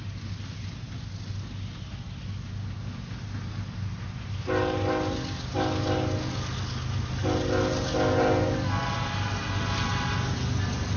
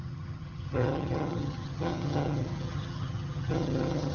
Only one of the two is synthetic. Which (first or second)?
second